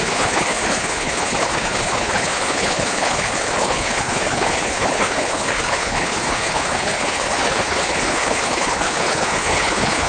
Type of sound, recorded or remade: remade